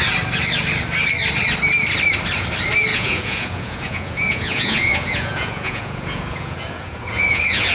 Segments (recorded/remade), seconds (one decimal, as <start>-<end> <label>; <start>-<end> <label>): 0.0-2.9 recorded; 2.9-7.7 remade